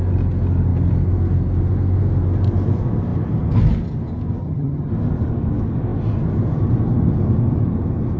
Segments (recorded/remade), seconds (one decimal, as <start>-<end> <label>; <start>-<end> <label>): 0.0-4.4 recorded; 4.4-4.9 remade; 4.9-8.2 recorded